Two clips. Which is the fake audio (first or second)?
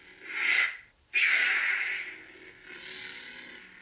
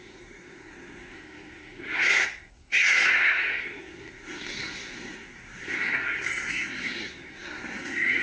second